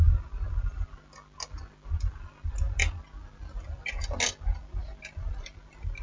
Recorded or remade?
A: recorded